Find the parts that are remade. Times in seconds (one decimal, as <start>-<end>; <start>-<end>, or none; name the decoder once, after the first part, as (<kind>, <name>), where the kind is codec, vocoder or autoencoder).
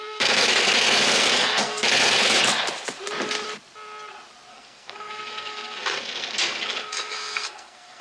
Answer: 0.0-2.4 (codec, SNAC); 4.5-8.0